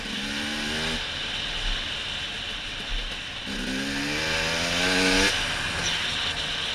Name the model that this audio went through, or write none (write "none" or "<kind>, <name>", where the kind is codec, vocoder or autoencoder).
none